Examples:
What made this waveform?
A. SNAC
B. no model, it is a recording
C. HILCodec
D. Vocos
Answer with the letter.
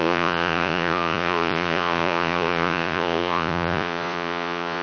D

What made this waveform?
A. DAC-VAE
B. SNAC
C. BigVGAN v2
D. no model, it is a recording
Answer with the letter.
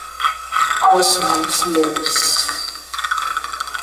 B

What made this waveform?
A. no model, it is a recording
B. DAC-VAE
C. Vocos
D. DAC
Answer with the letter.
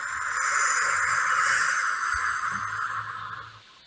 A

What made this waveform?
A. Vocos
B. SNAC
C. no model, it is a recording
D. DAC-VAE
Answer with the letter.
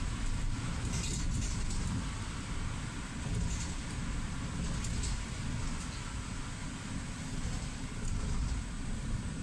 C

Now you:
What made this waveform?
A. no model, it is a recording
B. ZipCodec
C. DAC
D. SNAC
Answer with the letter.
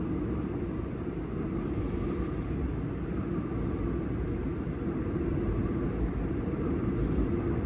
A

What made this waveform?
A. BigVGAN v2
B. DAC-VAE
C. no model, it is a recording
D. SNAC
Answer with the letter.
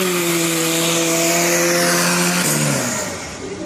C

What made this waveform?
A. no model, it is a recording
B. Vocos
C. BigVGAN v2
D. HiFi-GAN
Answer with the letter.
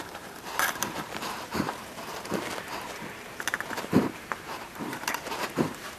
C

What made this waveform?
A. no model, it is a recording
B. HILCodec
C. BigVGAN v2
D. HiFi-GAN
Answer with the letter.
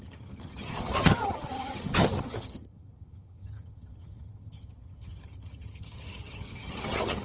D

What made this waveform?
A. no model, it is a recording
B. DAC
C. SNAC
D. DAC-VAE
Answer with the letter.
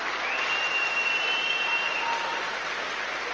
A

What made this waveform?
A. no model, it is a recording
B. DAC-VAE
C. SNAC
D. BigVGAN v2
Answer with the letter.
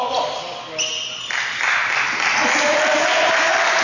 A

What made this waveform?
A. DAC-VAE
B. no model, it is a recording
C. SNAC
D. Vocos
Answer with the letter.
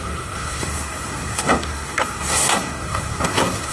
C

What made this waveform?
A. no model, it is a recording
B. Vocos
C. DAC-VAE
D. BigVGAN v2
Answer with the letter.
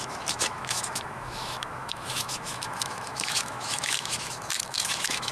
C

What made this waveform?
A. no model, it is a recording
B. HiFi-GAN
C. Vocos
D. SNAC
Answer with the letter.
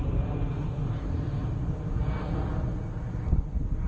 A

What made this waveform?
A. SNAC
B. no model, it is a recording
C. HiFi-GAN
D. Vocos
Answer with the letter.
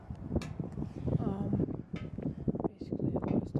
B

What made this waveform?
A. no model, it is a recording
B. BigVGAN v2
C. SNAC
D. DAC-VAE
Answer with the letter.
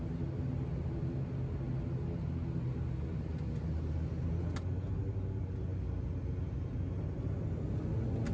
A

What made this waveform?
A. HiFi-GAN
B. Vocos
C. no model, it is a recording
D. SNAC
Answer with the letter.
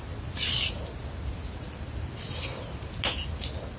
C